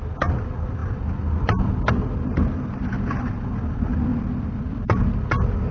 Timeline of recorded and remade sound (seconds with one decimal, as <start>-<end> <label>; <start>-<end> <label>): 0.0-5.7 remade